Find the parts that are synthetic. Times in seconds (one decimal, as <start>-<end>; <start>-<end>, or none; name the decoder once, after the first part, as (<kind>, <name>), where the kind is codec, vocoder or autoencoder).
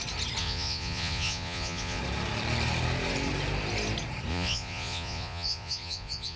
0.4-2.0 (vocoder, Vocos); 4.3-6.4